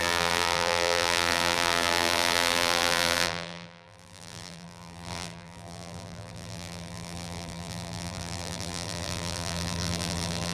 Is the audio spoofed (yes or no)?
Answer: yes